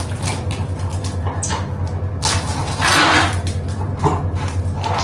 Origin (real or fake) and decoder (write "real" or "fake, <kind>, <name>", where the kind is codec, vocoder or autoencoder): real